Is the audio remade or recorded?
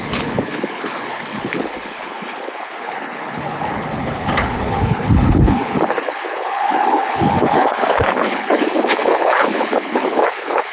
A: remade